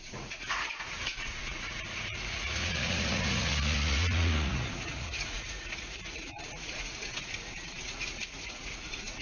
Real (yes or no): no